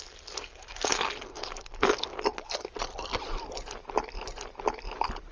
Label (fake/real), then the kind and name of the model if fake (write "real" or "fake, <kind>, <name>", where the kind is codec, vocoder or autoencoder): real